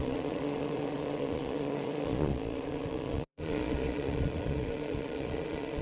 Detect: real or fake fake